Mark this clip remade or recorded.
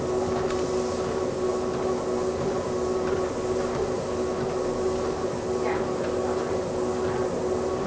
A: recorded